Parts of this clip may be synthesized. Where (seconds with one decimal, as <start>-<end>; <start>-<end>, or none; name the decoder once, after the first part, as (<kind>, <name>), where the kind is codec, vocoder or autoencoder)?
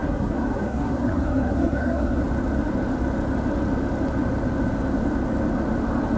0.0-2.2 (codec, SNAC)